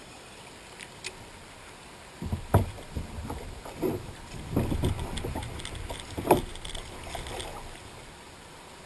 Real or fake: real